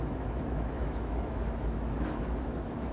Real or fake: fake